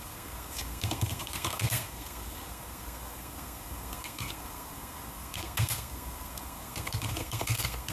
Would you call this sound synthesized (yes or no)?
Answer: yes